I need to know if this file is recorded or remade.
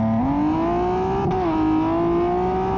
recorded